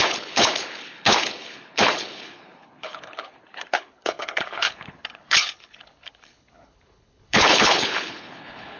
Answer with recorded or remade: remade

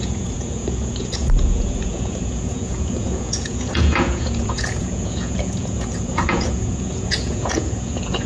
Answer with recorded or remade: remade